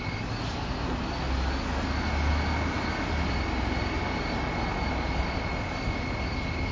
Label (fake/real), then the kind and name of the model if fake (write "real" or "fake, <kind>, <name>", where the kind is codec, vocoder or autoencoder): real